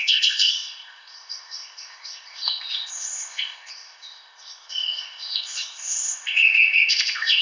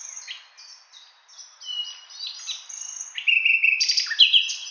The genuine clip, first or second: second